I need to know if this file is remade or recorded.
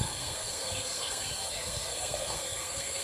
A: remade